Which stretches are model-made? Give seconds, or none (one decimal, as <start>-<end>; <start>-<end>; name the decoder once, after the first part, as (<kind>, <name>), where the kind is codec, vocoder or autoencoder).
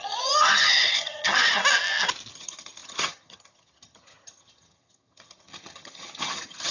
0.0-1.6 (vocoder, HiFi-GAN); 2.3-6.7